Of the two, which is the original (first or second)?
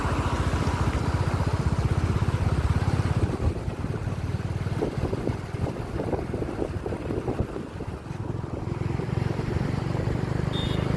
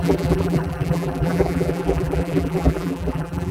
first